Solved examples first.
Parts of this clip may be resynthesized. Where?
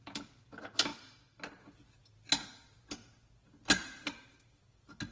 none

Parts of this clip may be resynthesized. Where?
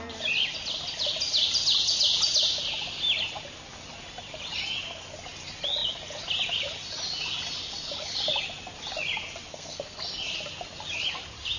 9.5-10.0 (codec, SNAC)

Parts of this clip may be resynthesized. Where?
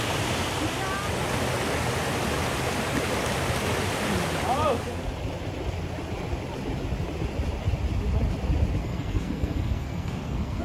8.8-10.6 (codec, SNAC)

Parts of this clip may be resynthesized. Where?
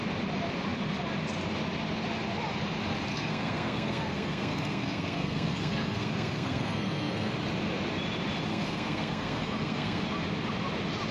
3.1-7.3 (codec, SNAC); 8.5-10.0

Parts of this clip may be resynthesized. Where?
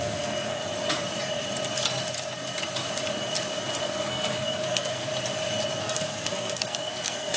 0.0-0.6 (codec, SNAC); 3.8-5.1; 5.8-7.4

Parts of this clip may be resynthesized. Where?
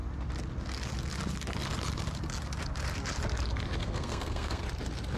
3.8-4.6 (codec, SNAC)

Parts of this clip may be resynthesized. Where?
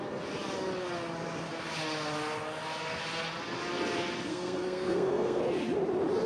4.3-5.4 (codec, SNAC)